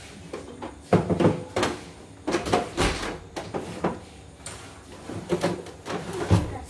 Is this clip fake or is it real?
real